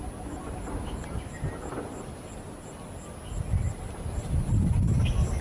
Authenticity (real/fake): real